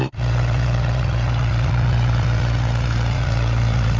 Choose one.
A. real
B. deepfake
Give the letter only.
B